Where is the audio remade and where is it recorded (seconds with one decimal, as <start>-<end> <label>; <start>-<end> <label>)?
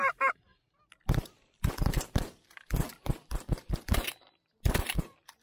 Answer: 0.0-0.5 remade; 0.5-1.1 recorded; 1.1-5.4 remade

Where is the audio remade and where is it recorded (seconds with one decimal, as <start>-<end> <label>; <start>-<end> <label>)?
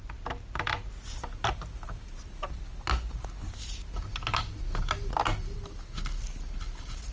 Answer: 0.0-1.4 recorded; 1.4-2.2 remade; 2.2-7.1 recorded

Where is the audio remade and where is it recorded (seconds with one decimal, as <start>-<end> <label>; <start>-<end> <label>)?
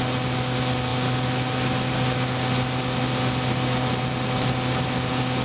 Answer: 0.0-5.4 recorded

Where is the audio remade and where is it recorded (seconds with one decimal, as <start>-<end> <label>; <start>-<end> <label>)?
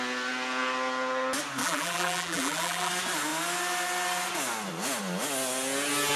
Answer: 0.0-1.6 recorded; 1.6-2.9 remade; 2.9-6.2 recorded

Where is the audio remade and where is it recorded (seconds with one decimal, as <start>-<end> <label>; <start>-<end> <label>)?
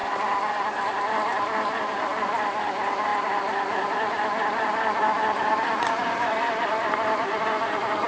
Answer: 0.0-3.1 recorded; 3.1-8.1 remade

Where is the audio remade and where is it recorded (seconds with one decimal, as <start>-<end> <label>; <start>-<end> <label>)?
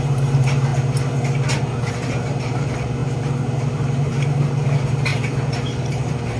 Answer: 0.0-0.7 remade; 0.7-1.9 recorded; 1.9-6.4 remade